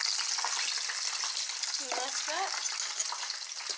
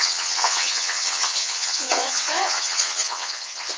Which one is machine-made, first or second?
second